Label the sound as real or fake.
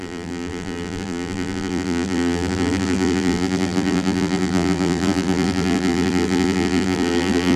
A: fake